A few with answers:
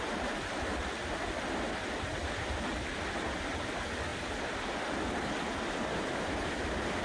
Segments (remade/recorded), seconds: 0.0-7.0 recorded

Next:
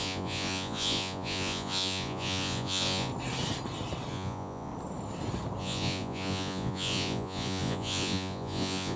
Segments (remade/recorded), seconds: 0.0-3.1 remade; 3.1-4.1 recorded; 4.1-4.7 remade; 4.7-5.6 recorded; 5.6-9.0 remade

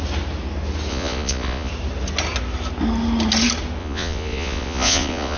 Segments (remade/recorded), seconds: 0.0-0.9 recorded; 0.9-1.7 remade; 1.7-3.8 recorded; 3.8-5.4 remade

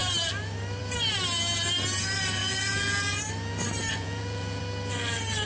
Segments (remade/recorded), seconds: 0.0-2.4 recorded; 2.4-3.2 remade; 3.2-3.9 recorded; 3.9-4.6 remade; 4.6-5.5 recorded